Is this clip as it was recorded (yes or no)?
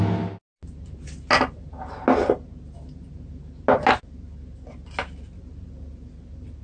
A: yes